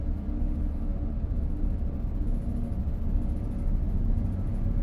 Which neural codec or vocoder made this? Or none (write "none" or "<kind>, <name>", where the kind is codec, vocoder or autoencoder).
none